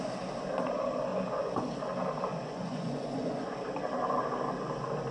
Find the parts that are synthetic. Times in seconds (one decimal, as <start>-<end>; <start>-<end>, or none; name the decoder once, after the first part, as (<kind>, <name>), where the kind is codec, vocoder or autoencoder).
1.1-1.7 (vocoder, Vocos); 2.3-3.5